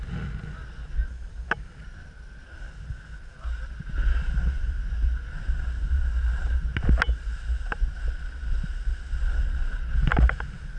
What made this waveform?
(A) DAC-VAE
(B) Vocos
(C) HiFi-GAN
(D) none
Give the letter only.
D